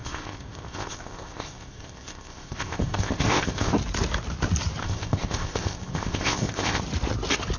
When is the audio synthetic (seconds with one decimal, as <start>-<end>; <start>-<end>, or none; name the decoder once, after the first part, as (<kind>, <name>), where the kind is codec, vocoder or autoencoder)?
0.0-3.7 (codec, ZipCodec); 4.8-6.8